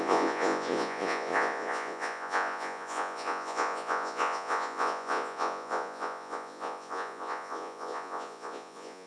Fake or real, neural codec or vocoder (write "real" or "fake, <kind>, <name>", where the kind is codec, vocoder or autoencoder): fake, vocoder, Vocos